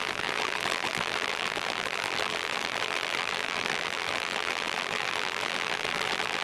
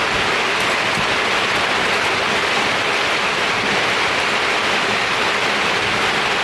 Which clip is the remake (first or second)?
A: first